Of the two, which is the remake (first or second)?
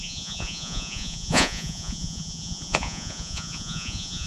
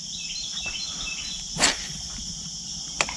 first